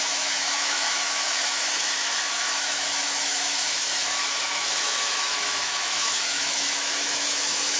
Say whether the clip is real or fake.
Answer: fake